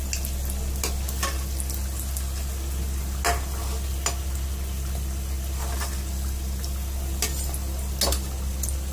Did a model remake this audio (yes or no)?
no